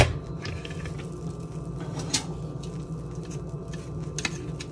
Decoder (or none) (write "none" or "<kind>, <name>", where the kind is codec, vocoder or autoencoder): none